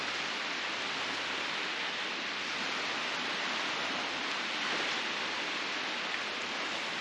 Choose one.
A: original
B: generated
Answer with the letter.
A